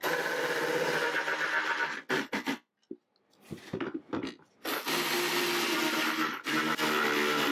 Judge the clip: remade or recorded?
recorded